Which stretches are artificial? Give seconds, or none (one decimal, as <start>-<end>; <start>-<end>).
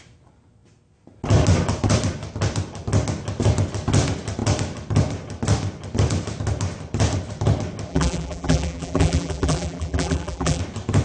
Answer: 7.9-10.6